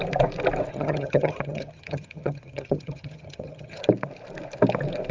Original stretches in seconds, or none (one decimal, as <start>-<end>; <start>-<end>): 0.0-0.7; 3.8-5.1